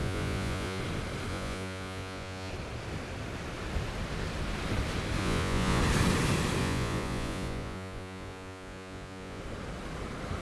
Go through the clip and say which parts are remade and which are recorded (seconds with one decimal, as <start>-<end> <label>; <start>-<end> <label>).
0.0-0.8 remade; 0.8-1.3 recorded; 1.3-2.5 remade; 2.5-5.2 recorded; 5.2-5.8 remade; 5.8-6.6 recorded; 6.6-9.4 remade; 9.4-10.4 recorded